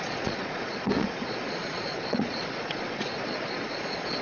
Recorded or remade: remade